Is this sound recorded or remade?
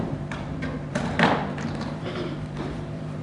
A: remade